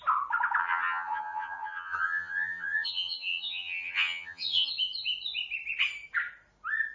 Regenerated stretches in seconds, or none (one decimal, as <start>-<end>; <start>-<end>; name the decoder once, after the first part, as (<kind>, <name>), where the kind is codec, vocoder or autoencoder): 0.6-4.7 (vocoder, HiFi-GAN)